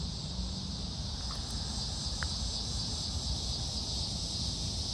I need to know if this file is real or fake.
real